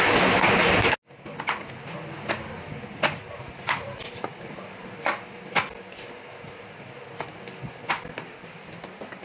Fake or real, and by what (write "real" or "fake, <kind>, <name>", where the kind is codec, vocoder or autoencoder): real